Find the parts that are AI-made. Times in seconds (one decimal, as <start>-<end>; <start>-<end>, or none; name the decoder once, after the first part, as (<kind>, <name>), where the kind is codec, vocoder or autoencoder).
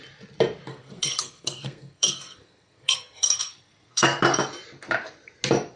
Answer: 0.7-4.2 (codec, SNAC)